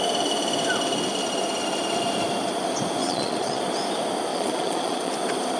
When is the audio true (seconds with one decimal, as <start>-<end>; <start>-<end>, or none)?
0.0-3.0; 3.6-4.3; 5.1-5.6